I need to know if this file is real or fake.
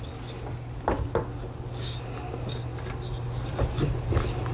real